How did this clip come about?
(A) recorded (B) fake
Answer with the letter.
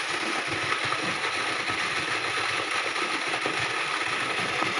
A